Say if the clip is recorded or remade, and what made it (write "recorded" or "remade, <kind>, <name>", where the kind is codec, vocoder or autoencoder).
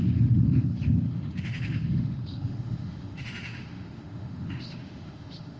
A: remade, autoencoder, DAC-VAE